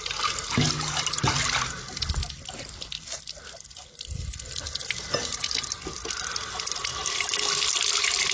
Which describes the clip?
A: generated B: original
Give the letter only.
B